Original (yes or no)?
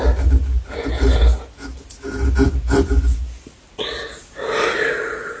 yes